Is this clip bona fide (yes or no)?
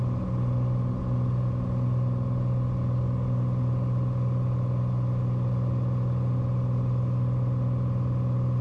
yes